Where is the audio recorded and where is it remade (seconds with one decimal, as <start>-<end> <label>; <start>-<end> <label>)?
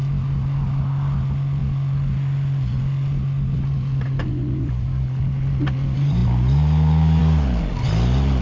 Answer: 0.0-8.4 recorded